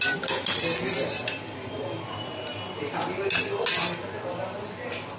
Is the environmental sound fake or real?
real